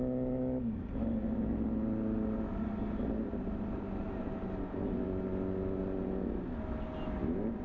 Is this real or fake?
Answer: real